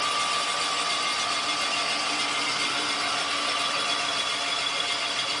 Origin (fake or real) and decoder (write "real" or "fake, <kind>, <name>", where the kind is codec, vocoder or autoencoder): real